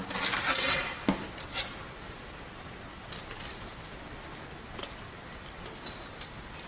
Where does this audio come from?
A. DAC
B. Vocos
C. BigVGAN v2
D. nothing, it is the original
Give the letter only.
D